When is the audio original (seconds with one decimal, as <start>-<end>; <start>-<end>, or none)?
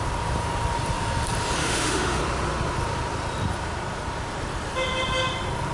0.0-1.6; 2.2-5.7